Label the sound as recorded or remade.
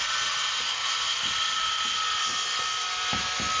recorded